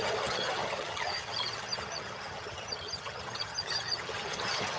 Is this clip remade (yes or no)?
yes